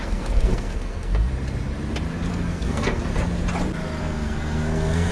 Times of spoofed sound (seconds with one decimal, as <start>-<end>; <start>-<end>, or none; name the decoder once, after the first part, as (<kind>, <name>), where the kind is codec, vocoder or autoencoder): 0.0-1.3 (codec, SNAC); 2.3-3.1; 4.0-5.1